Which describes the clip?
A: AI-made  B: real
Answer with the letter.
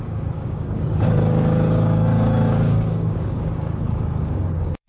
A